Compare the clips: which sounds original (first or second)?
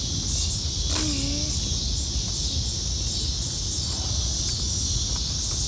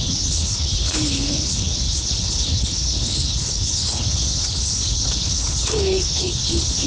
first